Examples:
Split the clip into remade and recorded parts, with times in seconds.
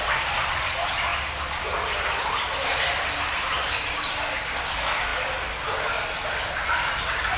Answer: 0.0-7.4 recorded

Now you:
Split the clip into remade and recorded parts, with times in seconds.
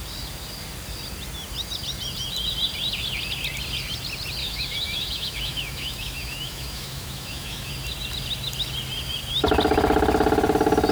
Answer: 0.0-4.4 recorded; 4.4-7.7 remade; 7.7-10.9 recorded